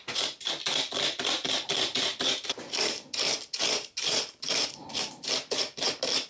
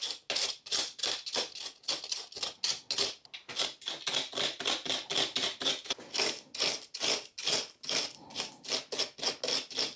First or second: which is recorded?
second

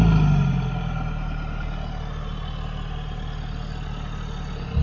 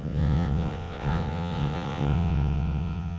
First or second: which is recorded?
first